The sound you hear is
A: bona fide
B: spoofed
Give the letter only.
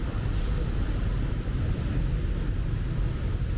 A